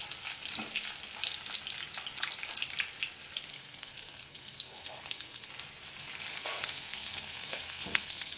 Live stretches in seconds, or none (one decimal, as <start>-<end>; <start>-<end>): 0.0-3.5; 5.5-6.3